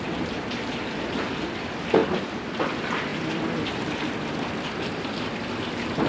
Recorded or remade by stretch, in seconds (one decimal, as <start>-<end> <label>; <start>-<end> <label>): 0.0-6.1 recorded